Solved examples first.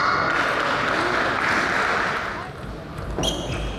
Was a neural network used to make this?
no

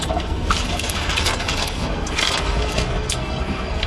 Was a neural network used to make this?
yes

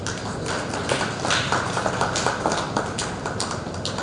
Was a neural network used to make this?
yes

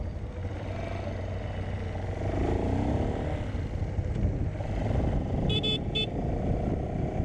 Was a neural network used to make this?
no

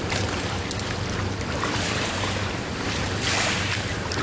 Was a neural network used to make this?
yes